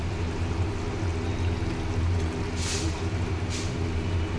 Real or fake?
real